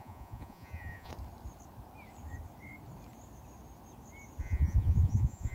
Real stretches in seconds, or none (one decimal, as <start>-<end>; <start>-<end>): 1.1-4.4